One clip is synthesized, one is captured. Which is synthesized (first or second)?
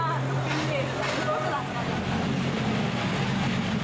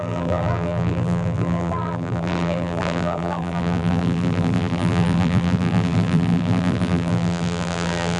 second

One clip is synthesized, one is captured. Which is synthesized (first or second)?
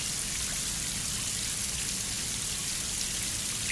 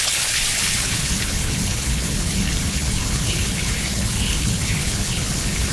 second